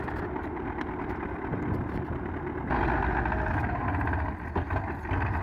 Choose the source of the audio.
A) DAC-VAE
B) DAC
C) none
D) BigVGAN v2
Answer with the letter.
C